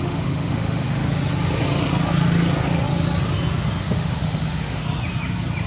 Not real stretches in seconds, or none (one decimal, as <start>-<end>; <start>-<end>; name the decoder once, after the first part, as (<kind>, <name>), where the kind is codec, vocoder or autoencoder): 0.0-1.0 (autoencoder, DAC-VAE); 3.8-4.8